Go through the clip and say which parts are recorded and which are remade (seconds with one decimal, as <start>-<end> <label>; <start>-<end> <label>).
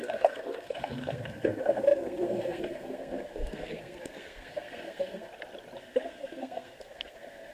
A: 0.0-5.3 remade; 5.3-5.8 recorded; 5.8-7.5 remade